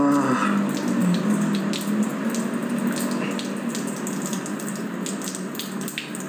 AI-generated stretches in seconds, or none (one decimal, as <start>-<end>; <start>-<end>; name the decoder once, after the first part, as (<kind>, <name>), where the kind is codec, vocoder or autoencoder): 1.0-1.6 (codec, DAC)